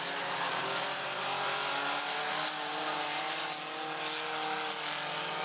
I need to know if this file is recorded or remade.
recorded